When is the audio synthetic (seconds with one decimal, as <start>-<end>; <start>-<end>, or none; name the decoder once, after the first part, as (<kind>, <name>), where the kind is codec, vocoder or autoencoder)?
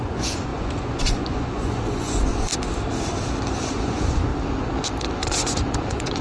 0.0-2.5 (vocoder, Vocos); 3.7-4.3; 5.1-6.2